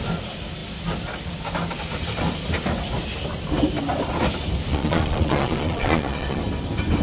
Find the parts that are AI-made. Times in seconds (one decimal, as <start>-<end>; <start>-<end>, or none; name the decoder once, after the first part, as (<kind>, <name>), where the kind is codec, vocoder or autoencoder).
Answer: 4.7-6.4 (vocoder, Vocos)